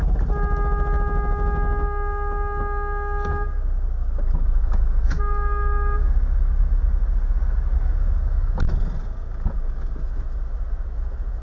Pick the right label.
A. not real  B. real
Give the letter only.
B